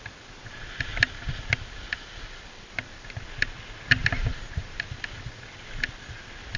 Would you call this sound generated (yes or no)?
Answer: no